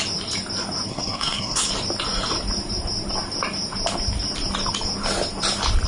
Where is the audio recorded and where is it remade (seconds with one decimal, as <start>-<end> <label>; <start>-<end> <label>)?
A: 0.0-0.9 recorded; 0.9-1.7 remade; 1.7-5.9 recorded